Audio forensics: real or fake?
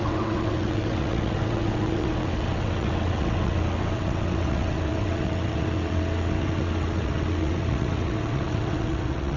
fake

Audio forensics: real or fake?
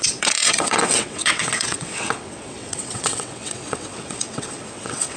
fake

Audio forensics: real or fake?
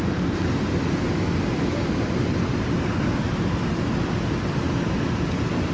real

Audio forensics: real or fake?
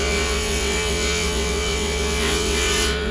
fake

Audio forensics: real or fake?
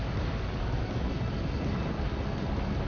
real